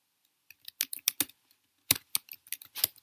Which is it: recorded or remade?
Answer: recorded